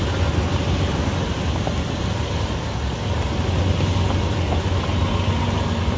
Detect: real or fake real